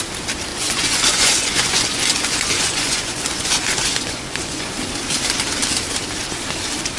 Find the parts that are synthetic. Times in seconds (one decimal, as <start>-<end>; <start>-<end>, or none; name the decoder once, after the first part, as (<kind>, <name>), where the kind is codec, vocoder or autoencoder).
0.5-4.7 (vocoder, Vocos)